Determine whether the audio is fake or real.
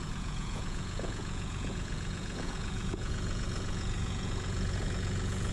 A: fake